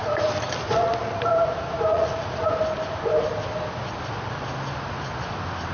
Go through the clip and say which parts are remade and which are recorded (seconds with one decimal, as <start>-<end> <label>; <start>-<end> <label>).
0.0-1.9 recorded; 1.9-2.5 remade; 2.5-5.7 recorded